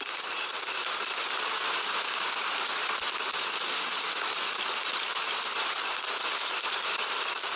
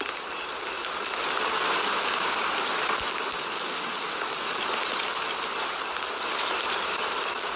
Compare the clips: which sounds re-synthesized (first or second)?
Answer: first